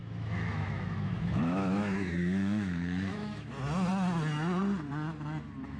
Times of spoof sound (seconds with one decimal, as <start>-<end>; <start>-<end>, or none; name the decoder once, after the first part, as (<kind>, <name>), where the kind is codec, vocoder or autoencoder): 0.0-3.5 (autoencoder, DAC-VAE)